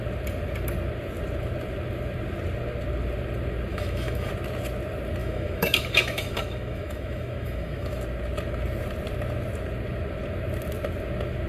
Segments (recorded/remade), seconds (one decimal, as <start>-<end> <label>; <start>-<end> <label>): 0.0-3.7 recorded; 3.7-4.3 remade; 4.3-5.2 recorded; 5.2-8.0 remade; 8.0-11.5 recorded